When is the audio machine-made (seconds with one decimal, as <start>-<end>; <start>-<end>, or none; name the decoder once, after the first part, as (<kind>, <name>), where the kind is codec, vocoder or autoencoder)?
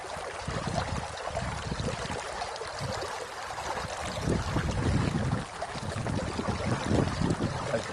none